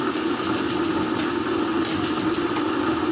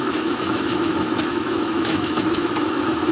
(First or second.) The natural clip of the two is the first